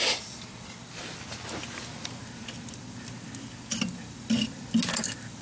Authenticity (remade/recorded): recorded